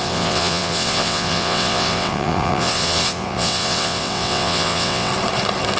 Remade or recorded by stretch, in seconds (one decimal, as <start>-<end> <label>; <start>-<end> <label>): 0.0-5.1 remade; 5.1-5.8 recorded